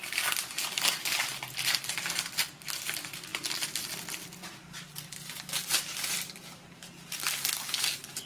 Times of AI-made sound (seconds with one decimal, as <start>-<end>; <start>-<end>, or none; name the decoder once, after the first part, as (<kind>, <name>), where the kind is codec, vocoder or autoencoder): none